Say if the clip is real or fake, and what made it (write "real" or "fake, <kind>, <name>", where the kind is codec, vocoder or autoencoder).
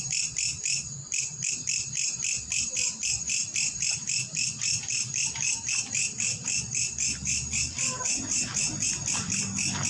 real